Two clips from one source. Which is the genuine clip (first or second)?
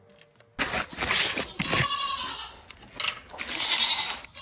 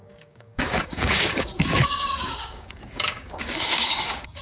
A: first